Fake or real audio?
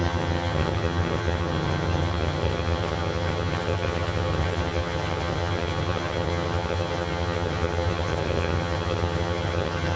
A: fake